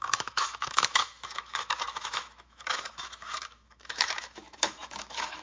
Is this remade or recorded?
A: remade